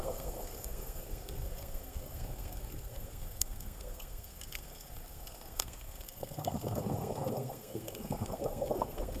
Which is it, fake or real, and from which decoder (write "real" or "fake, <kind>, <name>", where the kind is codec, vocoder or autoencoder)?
fake, codec, SNAC